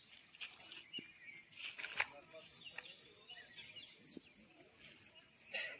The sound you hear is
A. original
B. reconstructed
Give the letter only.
A